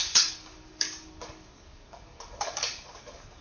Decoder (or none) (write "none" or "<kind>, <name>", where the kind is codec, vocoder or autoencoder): codec, DAC